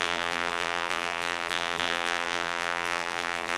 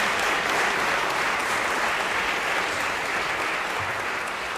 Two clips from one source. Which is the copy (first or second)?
first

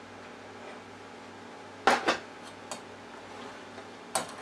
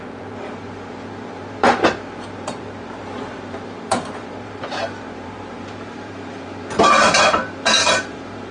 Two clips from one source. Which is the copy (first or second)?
second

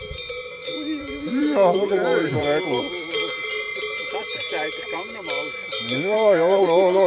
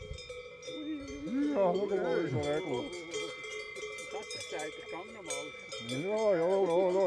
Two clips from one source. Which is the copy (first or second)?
first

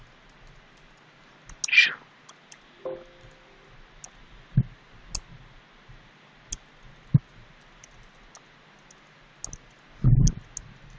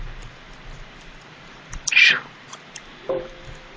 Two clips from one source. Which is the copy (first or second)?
second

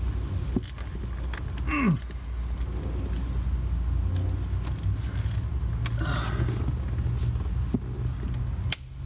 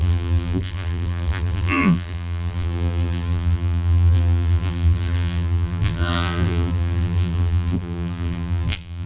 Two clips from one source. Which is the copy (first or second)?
second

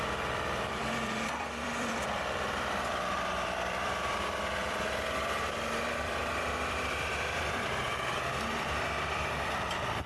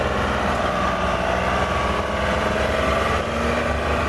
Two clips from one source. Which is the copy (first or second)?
first